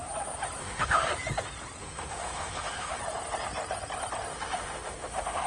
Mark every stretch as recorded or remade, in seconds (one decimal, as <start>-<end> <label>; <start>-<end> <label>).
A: 0.0-0.6 recorded; 0.6-1.1 remade; 1.1-1.8 recorded; 1.8-3.0 remade; 3.0-4.3 recorded; 4.3-5.5 remade